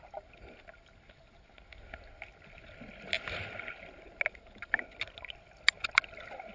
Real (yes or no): yes